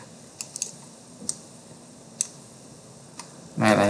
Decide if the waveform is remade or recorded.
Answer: recorded